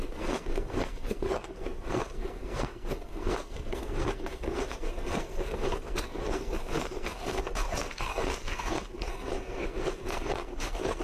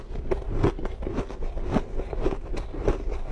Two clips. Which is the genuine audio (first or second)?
second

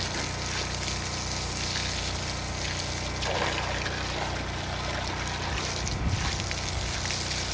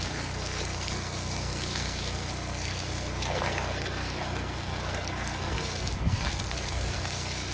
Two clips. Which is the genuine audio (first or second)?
first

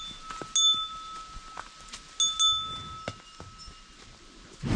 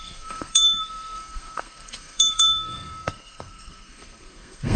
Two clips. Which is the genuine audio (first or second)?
first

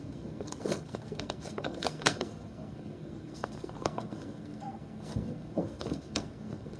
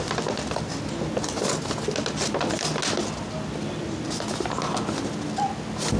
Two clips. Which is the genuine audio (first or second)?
second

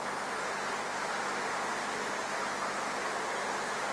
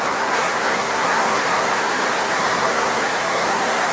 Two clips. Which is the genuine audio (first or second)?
first